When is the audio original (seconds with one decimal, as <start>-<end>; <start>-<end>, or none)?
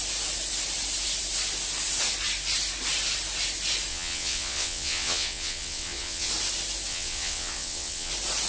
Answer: 0.0-3.9; 6.3-6.9; 8.1-8.5